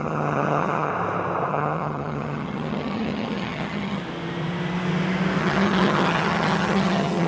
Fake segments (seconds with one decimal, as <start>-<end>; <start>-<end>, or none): 0.0-0.9; 1.5-4.0; 5.4-7.3